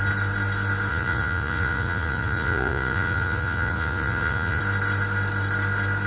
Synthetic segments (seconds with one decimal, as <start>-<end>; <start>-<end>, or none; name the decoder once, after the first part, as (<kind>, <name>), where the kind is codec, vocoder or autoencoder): 0.9-4.6 (vocoder, Vocos)